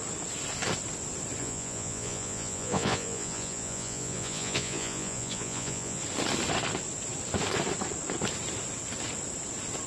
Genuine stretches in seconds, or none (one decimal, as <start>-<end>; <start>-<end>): 0.0-1.4; 6.0-9.9